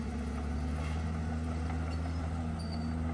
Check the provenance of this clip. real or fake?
real